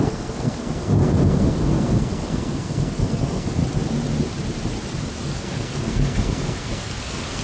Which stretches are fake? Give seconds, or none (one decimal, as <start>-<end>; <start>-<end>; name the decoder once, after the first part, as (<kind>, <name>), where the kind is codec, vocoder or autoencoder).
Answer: 0.0-3.6 (codec, SNAC); 5.2-7.4